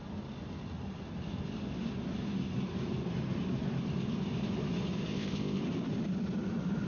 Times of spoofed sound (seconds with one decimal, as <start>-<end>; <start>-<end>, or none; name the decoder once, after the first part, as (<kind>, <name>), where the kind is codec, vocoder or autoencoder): 5.1-5.6 (codec, ZipCodec)

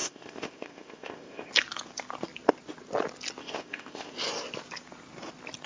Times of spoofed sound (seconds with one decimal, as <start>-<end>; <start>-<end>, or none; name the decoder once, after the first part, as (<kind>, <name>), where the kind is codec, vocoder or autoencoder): 0.0-1.5 (codec, ZipCodec); 3.4-4.1

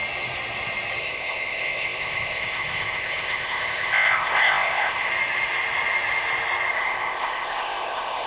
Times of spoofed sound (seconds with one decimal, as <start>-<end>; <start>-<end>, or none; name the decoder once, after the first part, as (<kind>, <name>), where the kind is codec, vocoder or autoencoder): 1.0-5.1 (codec, ZipCodec); 6.7-8.3